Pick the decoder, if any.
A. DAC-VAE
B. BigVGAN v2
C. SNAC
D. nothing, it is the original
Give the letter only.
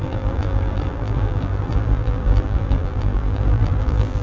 B